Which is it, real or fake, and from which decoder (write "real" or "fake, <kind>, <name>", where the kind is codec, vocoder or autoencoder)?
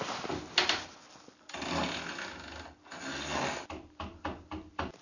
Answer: real